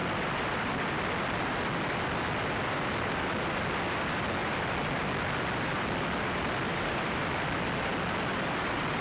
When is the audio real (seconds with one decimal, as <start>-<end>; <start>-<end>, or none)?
0.0-6.7; 7.2-9.0